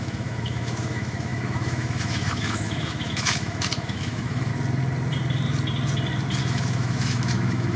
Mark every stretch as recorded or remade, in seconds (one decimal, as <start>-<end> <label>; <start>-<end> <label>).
0.0-4.5 remade; 4.5-6.4 recorded; 6.4-7.8 remade